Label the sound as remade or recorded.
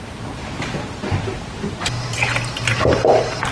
recorded